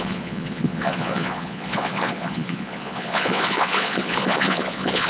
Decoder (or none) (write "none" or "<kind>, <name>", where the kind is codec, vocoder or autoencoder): vocoder, Vocos